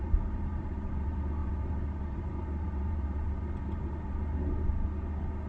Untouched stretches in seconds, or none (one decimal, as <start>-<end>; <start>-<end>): 4.7-5.5